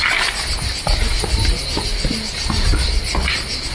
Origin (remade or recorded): recorded